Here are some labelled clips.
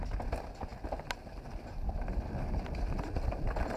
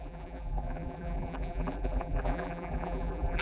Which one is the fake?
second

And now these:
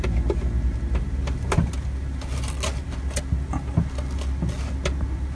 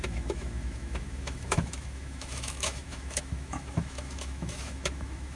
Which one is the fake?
second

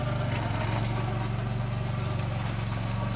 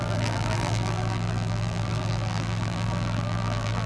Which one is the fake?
second